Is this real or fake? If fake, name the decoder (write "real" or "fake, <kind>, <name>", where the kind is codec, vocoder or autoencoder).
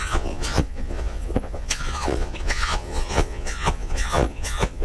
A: fake, vocoder, Vocos